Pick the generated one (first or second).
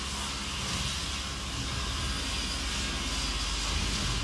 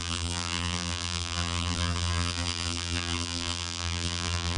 second